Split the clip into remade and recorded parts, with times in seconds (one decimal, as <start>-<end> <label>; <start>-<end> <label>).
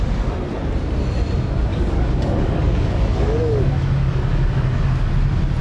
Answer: 0.0-1.7 recorded; 1.7-5.1 remade; 5.1-5.6 recorded